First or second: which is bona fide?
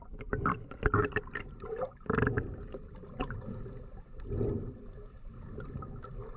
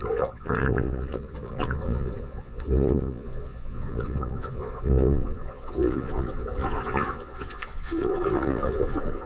first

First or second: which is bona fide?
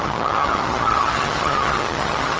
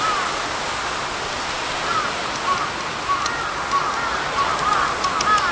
second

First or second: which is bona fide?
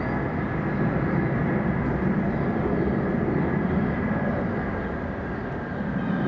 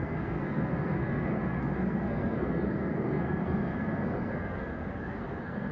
first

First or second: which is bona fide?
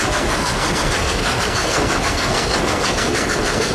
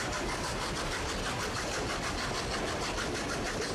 second